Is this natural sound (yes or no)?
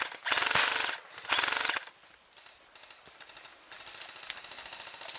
yes